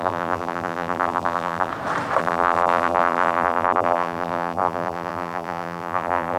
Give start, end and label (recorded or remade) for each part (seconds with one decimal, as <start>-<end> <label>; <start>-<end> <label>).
0.0-1.7 remade; 1.7-2.2 recorded; 2.2-6.4 remade